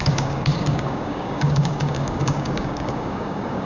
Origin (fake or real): fake